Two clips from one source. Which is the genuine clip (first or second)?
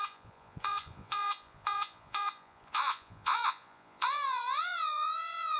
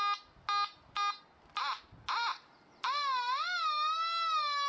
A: second